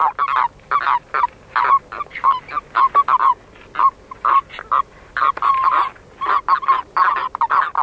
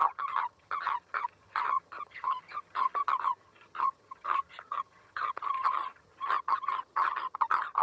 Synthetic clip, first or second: second